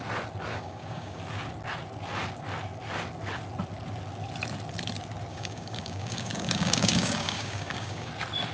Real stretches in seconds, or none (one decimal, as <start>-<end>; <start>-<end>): 0.0-0.5; 1.2-5.3; 8.1-8.5